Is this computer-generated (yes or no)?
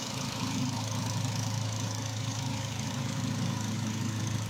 yes